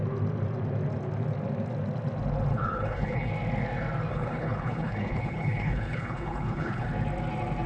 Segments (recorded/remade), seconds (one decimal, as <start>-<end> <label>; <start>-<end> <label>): 0.0-2.5 recorded; 2.5-3.3 remade; 3.3-4.1 recorded; 4.1-6.9 remade; 6.9-7.7 recorded

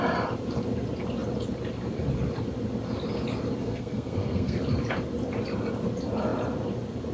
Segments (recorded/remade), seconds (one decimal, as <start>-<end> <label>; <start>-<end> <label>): 0.0-3.6 recorded; 3.6-4.6 remade; 4.6-7.1 recorded